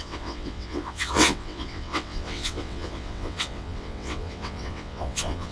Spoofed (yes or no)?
yes